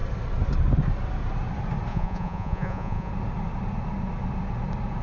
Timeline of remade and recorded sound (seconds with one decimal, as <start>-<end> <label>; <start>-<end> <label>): 0.0-1.9 recorded; 1.9-3.1 remade; 3.1-5.0 recorded